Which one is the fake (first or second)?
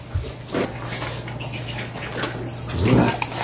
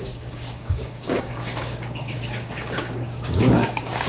second